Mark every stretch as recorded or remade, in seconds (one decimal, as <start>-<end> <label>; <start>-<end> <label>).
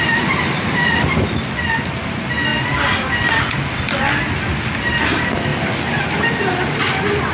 0.0-7.3 recorded